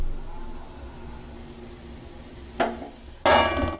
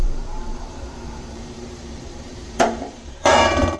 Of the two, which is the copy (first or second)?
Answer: second